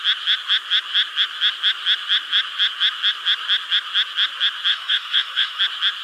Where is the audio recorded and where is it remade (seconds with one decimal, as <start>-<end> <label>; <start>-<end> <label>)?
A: 0.0-4.7 recorded; 4.7-5.6 remade; 5.6-6.0 recorded